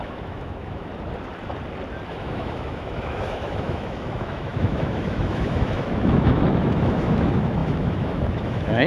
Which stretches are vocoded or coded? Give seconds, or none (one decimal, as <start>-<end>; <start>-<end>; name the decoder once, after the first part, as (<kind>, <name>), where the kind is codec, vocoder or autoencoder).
0.0-0.9 (autoencoder, DAC-VAE); 2.1-8.9